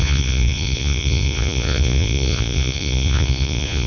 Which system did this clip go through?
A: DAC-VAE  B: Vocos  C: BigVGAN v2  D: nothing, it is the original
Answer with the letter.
B